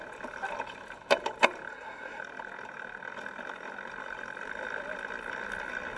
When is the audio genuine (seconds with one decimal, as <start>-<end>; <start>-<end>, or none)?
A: 0.0-1.7; 2.2-6.0